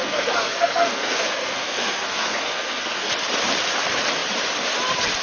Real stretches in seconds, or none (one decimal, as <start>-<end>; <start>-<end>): 3.1-5.2